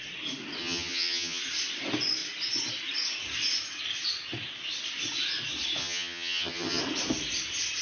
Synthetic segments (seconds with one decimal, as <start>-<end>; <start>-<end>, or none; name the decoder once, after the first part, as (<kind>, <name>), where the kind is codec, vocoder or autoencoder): 0.6-1.4 (vocoder, HiFi-GAN); 5.8-6.8